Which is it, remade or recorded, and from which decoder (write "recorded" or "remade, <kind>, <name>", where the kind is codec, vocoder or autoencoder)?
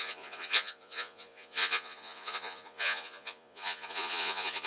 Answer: remade, vocoder, Vocos